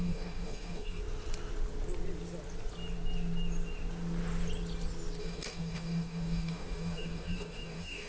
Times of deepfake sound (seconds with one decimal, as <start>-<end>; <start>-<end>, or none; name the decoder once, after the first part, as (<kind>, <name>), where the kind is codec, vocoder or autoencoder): 0.0-1.0 (codec, DAC); 5.2-8.1